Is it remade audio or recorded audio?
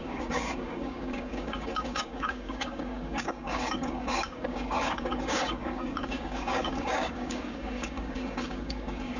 remade